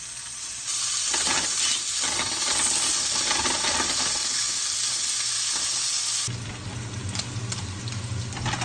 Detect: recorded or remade recorded